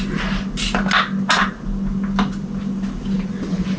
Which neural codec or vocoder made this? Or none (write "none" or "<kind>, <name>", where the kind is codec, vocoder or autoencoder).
none